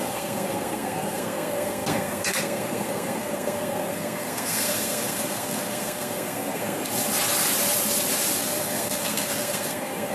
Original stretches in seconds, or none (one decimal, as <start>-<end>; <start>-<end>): 6.8-8.4